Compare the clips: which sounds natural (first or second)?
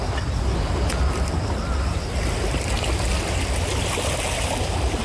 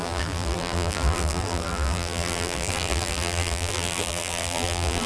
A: first